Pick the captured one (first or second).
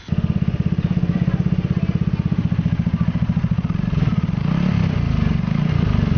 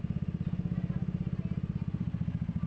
second